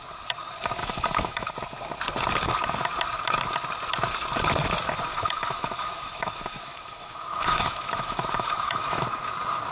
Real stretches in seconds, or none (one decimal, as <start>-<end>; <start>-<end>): 0.0-0.8; 1.5-5.1; 9.0-9.7